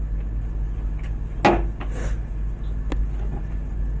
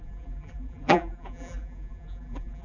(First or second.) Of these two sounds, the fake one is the second